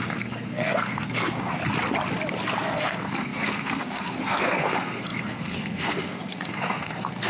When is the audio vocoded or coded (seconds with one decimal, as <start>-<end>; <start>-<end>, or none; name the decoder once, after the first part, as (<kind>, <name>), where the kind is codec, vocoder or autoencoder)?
0.0-1.6 (codec, SNAC); 2.6-7.3